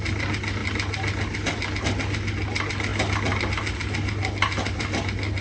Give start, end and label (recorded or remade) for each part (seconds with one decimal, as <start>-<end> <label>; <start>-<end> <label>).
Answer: 0.0-5.4 recorded